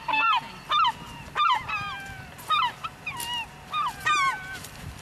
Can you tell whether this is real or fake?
real